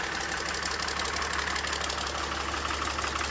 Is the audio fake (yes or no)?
no